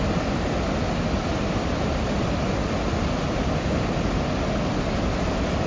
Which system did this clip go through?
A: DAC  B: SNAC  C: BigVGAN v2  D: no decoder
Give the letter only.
D